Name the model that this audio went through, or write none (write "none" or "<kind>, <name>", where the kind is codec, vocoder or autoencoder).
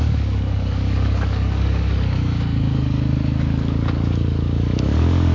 codec, DAC